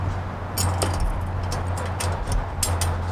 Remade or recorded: recorded